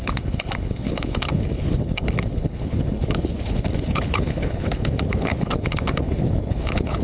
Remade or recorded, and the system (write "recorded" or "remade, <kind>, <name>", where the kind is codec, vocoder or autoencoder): remade, codec, HILCodec